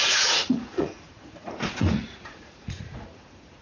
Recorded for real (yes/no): no